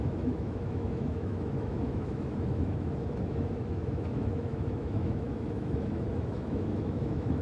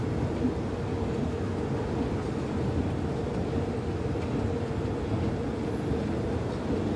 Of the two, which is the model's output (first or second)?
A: first